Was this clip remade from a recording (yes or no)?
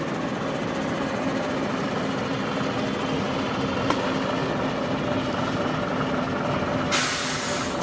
no